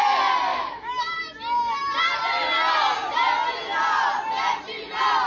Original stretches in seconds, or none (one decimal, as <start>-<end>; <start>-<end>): 0.0-0.5; 1.2-5.3